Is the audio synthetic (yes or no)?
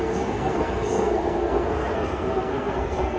yes